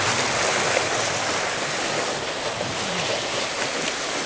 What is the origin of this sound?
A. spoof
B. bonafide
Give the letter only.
B